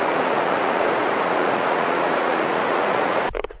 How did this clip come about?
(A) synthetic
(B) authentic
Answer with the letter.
A